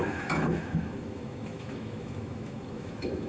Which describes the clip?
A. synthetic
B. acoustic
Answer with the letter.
A